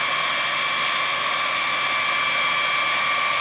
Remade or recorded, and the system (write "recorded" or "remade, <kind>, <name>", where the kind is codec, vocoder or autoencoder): recorded